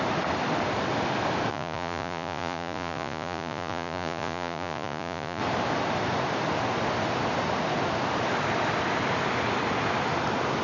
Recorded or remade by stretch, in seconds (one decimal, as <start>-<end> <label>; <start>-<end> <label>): 0.0-1.5 recorded; 1.5-5.4 remade; 5.4-10.6 recorded